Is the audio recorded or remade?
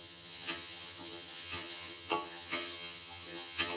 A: remade